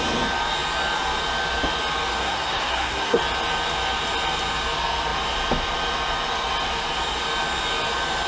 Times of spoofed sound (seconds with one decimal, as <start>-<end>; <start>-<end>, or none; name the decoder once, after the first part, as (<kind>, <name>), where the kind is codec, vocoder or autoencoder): 2.2-3.2 (codec, SNAC)